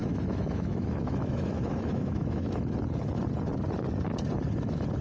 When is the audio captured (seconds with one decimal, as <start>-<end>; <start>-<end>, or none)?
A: 2.5-5.0